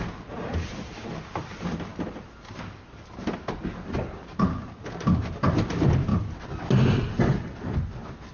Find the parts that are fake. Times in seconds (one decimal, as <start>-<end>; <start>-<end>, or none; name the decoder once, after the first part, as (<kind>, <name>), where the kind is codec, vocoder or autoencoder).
none